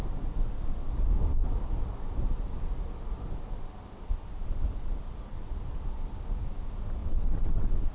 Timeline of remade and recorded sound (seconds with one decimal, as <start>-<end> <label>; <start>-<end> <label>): 0.0-7.0 recorded; 7.0-7.9 remade